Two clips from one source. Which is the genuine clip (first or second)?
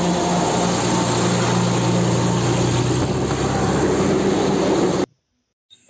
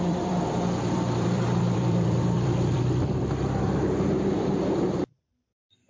first